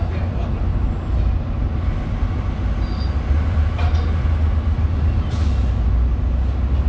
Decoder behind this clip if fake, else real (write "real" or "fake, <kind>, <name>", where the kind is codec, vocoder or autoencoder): real